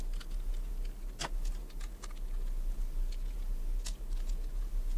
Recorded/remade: recorded